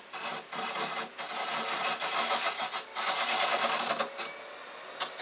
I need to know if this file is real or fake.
real